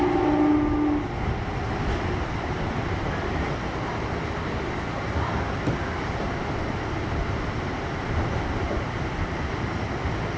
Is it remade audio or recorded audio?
recorded